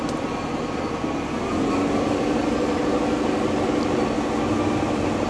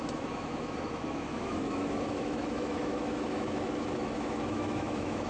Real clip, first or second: first